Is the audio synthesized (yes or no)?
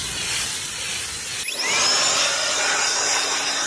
no